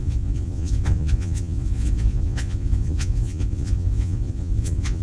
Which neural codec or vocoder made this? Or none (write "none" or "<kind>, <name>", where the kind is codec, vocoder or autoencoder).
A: vocoder, Vocos